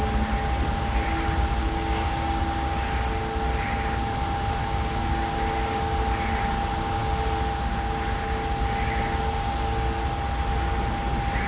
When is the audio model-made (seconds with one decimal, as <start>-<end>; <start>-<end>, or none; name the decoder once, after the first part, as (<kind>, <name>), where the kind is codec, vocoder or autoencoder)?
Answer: 1.6-2.4 (codec, DAC); 4.6-5.1